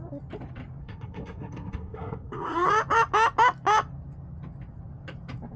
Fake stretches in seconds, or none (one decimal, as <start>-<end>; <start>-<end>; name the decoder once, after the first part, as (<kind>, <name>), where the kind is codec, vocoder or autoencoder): 0.8-2.7 (codec, SNAC)